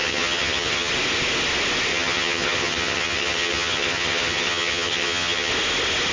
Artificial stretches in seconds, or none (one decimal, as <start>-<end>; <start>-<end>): 0.0-0.9; 1.9-5.5